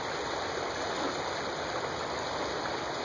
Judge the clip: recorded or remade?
recorded